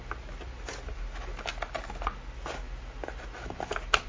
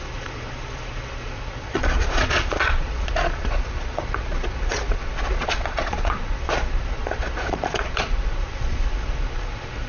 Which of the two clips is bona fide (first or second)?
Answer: first